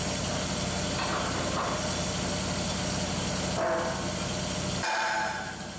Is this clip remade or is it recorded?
recorded